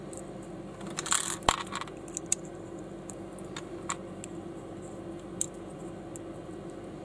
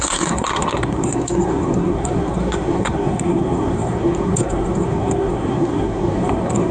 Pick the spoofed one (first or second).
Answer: second